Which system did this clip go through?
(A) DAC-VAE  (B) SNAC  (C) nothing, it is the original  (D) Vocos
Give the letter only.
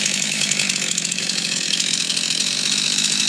A